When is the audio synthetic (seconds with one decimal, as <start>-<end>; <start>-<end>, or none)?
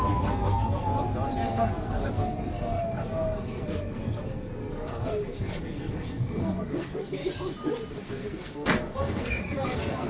0.0-0.9; 1.4-7.2; 7.9-10.1